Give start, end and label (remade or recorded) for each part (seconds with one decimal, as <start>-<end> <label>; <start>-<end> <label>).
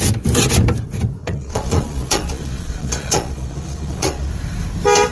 0.0-1.2 recorded; 1.2-4.3 remade; 4.3-5.1 recorded